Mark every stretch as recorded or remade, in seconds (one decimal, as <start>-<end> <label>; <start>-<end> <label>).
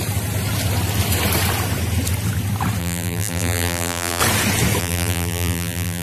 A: 0.0-2.8 recorded; 2.8-4.2 remade; 4.2-4.8 recorded; 4.8-6.0 remade